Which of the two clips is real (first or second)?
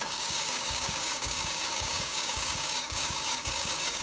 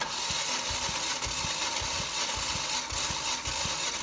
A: second